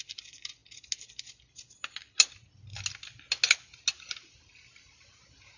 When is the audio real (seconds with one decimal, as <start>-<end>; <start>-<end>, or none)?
0.0-5.6